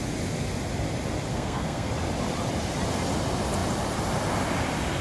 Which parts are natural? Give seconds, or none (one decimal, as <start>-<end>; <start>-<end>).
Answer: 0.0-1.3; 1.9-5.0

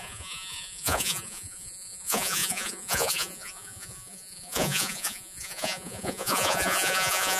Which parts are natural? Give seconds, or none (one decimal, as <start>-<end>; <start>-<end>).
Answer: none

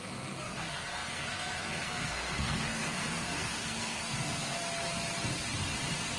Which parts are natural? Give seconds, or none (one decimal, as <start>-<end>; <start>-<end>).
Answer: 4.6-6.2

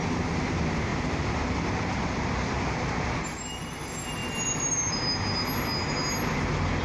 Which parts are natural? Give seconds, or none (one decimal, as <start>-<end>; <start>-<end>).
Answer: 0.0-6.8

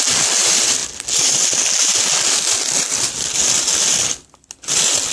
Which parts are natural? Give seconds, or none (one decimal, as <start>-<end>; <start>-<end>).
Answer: 0.0-5.1

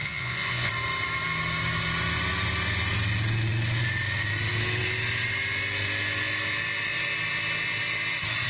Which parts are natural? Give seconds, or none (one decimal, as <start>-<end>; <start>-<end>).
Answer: 0.7-8.5